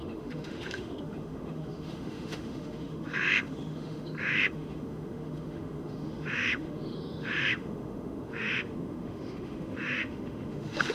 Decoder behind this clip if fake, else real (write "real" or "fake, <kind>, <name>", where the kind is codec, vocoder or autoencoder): fake, autoencoder, DAC-VAE